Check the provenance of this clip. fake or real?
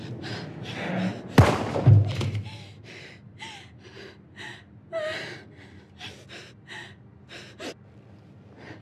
real